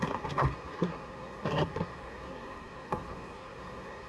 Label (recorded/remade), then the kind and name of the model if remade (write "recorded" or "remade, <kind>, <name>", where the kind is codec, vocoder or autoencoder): remade, codec, SNAC